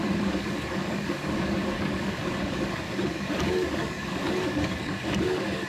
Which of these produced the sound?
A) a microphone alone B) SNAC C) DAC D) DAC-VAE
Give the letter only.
C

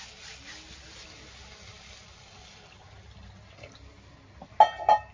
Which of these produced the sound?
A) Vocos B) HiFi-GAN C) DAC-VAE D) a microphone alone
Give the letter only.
D